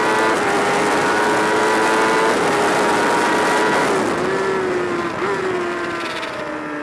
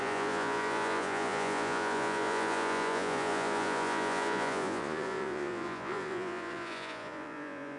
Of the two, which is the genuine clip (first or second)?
first